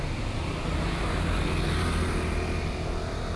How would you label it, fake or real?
real